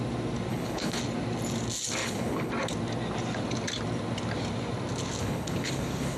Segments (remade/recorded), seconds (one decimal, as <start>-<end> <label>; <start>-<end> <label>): 0.0-0.5 recorded; 0.5-1.0 remade; 1.0-2.0 recorded; 2.0-2.5 remade; 2.5-5.2 recorded; 5.2-6.2 remade